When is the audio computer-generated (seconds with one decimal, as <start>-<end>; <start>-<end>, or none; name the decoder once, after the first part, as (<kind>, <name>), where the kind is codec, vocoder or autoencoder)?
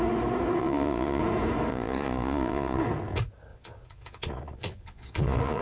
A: 0.6-1.2 (vocoder, Vocos); 1.7-2.8; 3.5-5.6